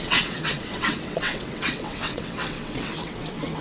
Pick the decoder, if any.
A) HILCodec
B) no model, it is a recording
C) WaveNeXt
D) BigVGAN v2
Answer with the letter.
C